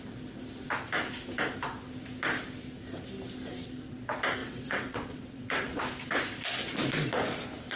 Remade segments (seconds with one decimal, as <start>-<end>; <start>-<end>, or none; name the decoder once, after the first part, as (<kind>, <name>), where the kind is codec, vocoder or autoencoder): 4.4-5.8 (vocoder, WaveNeXt)